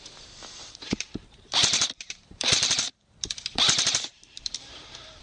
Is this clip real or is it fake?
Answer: fake